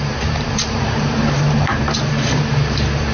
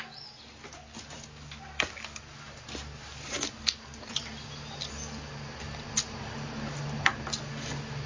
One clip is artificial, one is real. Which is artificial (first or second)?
first